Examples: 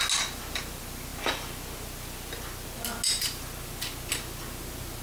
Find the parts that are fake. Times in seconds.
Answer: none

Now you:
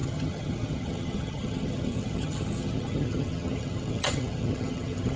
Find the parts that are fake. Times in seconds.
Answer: 0.0-5.2 (vocoder, HiFi-GAN)

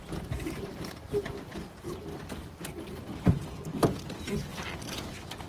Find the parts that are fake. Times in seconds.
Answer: 0.8-1.5 (vocoder, BigVGAN v2); 3.9-4.5; 5.1-5.5

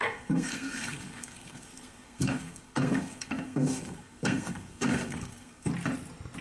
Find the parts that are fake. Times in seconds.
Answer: 0.0-5.7 (codec, SNAC)